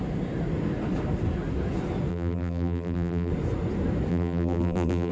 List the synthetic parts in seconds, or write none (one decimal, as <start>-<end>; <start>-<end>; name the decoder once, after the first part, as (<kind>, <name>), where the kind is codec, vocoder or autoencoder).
2.1-3.3 (vocoder, BigVGAN v2); 4.1-5.1